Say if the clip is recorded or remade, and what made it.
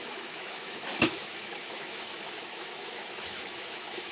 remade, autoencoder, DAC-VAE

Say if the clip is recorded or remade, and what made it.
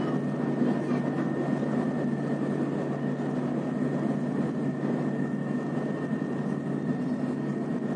recorded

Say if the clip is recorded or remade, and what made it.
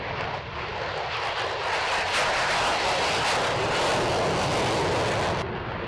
recorded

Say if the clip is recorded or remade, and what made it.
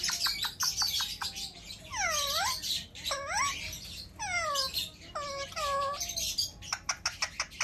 recorded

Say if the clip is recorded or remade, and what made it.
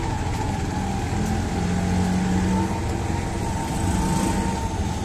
recorded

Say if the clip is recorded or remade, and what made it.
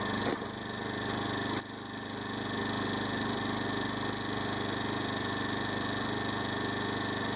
recorded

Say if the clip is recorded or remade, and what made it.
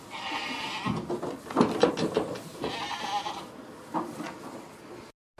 recorded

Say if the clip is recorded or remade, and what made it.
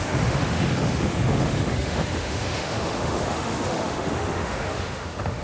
remade, autoencoder, DAC-VAE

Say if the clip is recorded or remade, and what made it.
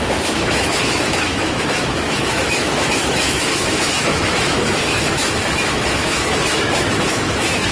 remade, autoencoder, DAC-VAE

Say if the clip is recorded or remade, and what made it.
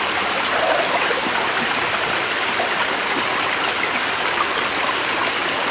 recorded